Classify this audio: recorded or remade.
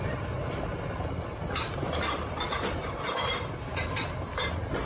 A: recorded